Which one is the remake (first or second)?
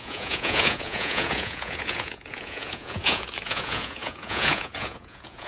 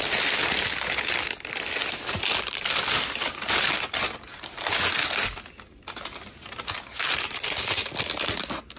first